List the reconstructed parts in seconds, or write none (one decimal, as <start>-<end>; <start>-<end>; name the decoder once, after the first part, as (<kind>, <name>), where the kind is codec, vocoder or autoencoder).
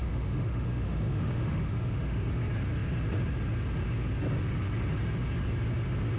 0.0-2.3 (autoencoder, DAC-VAE)